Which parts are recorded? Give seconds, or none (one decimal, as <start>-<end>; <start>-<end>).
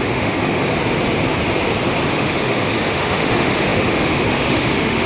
0.6-2.1